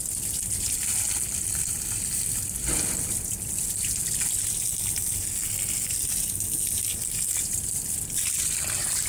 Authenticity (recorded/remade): recorded